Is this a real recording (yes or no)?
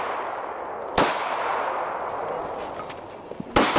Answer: yes